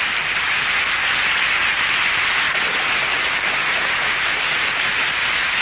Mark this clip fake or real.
fake